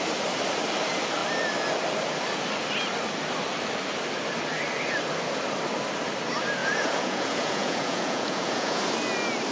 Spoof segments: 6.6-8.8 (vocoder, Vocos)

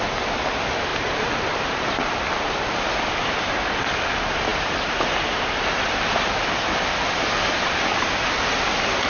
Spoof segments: none

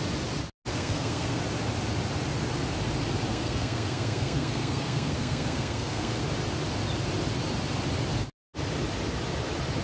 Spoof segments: 0.7-1.4 (codec, SNAC); 3.3-6.2

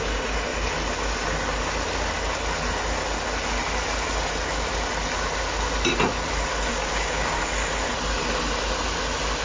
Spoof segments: 6.7-7.4 (codec, DAC)

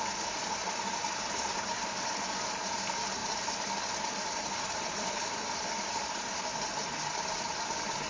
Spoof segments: 0.0-8.1 (vocoder, BigVGAN v2)

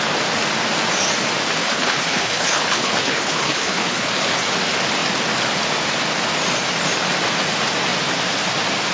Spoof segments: 1.6-4.1 (codec, HILCodec)

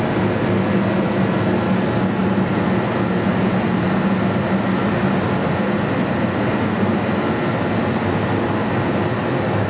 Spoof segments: none

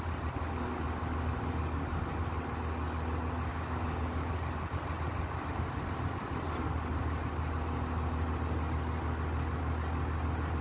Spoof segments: 3.5-4.3 (codec, DAC)